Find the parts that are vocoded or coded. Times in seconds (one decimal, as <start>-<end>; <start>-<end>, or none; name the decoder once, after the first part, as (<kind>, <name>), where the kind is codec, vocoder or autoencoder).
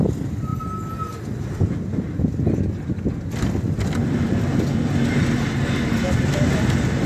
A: none